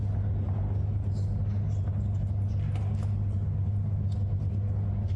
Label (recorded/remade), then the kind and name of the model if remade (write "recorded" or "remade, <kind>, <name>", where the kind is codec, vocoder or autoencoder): recorded